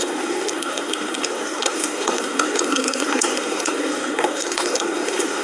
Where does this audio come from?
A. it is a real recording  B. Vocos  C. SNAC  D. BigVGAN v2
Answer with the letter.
C